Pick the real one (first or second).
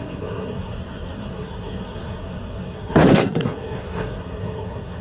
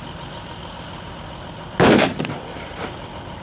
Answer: second